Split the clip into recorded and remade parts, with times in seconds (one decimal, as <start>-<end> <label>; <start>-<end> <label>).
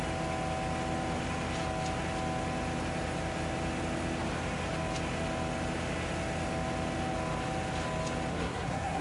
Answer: 0.0-8.3 recorded; 8.3-9.0 remade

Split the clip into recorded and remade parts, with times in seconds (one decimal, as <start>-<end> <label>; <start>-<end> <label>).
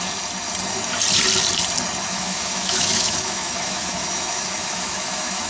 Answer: 0.0-2.1 recorded; 2.1-5.5 remade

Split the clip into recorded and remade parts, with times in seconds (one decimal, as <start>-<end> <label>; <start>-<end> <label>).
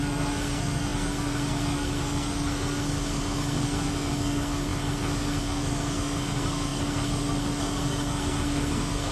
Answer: 0.0-9.1 remade